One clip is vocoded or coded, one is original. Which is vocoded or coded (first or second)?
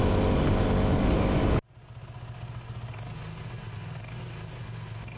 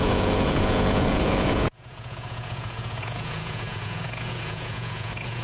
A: second